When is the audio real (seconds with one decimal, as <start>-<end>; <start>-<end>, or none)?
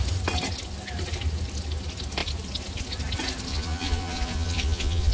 0.0-3.5